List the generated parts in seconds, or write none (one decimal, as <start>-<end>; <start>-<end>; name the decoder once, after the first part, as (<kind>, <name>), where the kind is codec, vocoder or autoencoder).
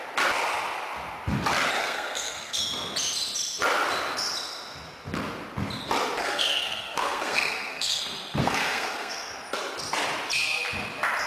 1.8-2.6 (codec, SNAC); 6.2-8.0; 8.4-9.3